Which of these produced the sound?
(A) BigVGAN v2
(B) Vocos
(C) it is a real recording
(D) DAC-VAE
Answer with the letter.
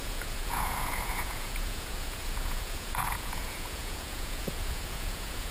B